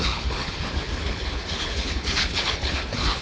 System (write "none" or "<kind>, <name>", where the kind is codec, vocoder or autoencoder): codec, HILCodec